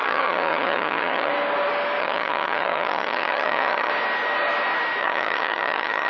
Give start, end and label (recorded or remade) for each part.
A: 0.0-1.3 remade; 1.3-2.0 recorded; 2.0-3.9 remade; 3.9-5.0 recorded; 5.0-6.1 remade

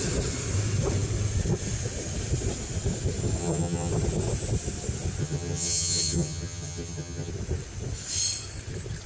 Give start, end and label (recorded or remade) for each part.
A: 0.0-3.4 recorded; 3.4-3.9 remade; 3.9-5.2 recorded; 5.2-7.3 remade; 7.3-9.1 recorded

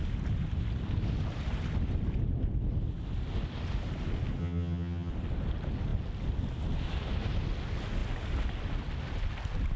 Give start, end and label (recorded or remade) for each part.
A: 0.0-4.4 recorded; 4.4-5.1 remade; 5.1-9.8 recorded

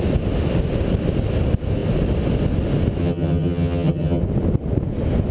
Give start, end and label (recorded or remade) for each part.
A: 0.0-3.0 recorded; 3.0-4.2 remade; 4.2-5.3 recorded

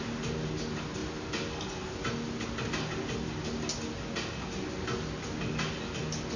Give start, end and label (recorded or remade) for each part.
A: 0.0-6.4 recorded